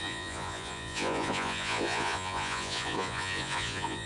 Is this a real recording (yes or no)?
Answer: no